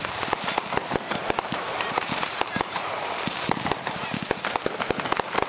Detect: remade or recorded remade